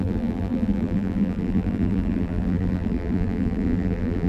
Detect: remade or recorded remade